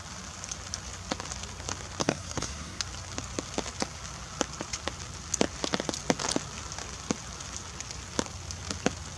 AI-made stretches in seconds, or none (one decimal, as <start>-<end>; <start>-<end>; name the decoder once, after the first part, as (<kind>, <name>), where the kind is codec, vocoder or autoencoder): 2.0-2.8 (codec, SNAC)